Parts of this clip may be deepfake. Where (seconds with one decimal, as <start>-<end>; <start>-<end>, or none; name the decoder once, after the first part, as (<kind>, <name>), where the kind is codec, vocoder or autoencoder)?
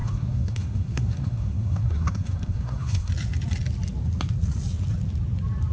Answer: 0.0-3.1 (codec, SNAC)